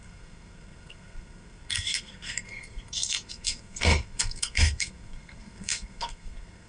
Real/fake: fake